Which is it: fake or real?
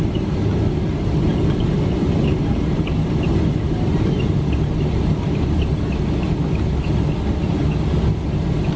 real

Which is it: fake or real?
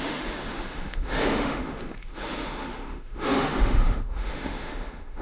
fake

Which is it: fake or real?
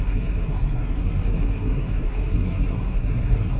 fake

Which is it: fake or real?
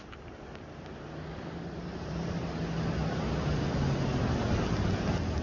real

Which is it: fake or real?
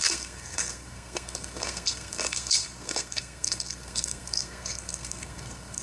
fake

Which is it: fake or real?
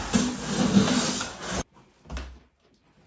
real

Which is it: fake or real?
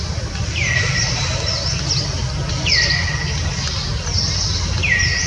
fake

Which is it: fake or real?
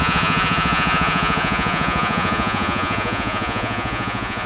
fake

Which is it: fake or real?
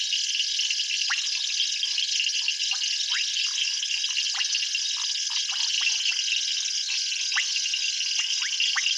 real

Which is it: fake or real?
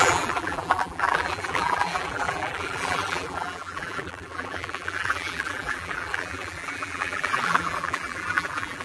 fake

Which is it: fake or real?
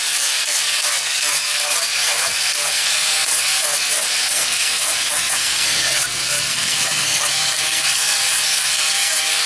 fake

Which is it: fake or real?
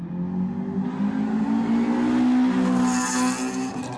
real